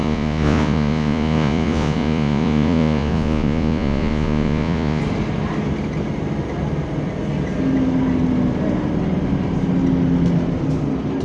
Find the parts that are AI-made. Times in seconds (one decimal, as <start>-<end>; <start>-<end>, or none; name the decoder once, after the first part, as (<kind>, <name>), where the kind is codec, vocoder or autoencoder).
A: 0.0-5.0 (vocoder, Vocos)